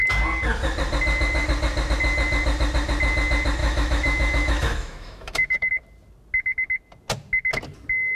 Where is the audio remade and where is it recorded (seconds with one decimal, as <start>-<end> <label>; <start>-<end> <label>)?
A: 0.0-3.6 recorded; 3.6-5.7 remade; 5.7-8.2 recorded